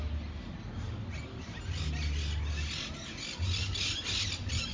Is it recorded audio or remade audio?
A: recorded